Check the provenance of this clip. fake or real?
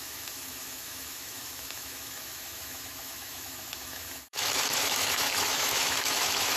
fake